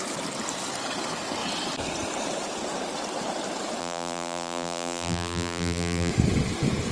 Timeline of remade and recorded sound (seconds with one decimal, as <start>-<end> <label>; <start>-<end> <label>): 0.0-3.8 recorded; 3.8-6.1 remade; 6.1-6.9 recorded